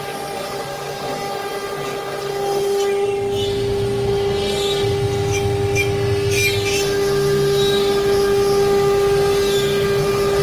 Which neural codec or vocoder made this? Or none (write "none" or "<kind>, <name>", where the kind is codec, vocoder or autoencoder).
none